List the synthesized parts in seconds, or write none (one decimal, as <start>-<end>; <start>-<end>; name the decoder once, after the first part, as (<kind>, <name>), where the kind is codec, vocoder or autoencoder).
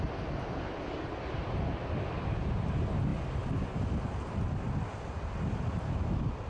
none